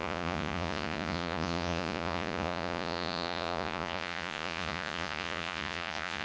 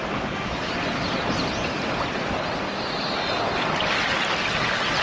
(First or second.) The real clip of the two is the second